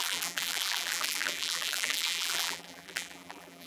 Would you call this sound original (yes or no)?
no